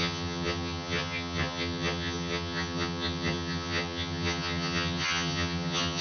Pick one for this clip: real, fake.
fake